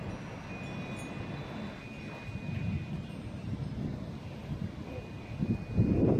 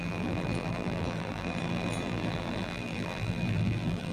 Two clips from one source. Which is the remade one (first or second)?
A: second